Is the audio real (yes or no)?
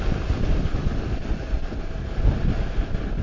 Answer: yes